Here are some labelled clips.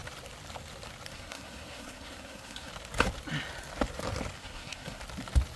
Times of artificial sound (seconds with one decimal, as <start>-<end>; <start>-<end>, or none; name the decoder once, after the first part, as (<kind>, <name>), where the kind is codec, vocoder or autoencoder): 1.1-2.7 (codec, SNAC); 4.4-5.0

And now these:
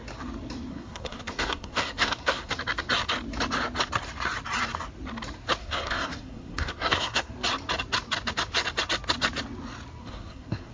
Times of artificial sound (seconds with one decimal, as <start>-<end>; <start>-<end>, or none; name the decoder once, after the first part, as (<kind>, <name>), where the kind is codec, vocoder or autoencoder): 0.7-2.5 (codec, SNAC); 5.6-7.3; 10.0-10.7

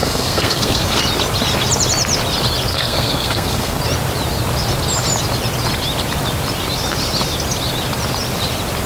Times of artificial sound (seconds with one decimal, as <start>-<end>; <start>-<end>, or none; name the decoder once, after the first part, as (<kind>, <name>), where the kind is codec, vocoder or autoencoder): 0.0-1.0 (codec, SNAC); 2.7-3.8

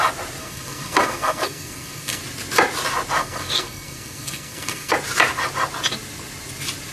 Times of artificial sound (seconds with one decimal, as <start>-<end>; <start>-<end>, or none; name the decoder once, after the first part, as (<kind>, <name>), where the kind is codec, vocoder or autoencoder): 0.4-2.2 (codec, SNAC); 3.2-4.9

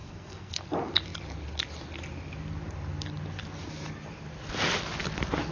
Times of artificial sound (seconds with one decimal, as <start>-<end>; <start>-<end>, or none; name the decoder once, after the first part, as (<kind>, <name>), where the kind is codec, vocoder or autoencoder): 0.0-0.6 (codec, SNAC)

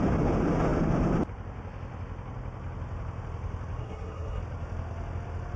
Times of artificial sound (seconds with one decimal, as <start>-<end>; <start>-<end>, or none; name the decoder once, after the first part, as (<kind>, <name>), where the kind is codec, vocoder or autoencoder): 3.8-4.4 (codec, SNAC)

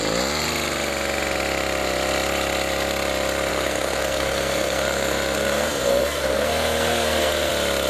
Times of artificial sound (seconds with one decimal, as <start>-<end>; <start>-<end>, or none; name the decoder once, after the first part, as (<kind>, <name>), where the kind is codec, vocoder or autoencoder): 3.5-7.5 (codec, SNAC)

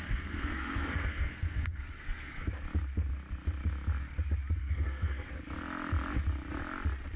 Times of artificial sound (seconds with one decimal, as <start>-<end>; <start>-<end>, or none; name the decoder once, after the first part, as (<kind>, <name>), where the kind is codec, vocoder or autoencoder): 0.0-2.5 (codec, SNAC); 4.6-5.3